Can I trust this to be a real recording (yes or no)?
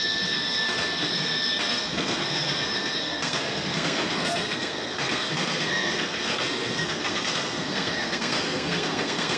no